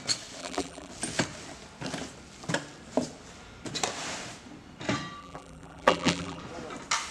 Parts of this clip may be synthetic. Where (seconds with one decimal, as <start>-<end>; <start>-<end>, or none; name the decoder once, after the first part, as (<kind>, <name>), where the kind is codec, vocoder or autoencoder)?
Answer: 0.4-0.9 (vocoder, BigVGAN v2); 5.2-6.4